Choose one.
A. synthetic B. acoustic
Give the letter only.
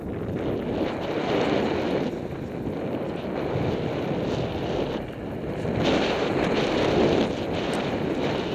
B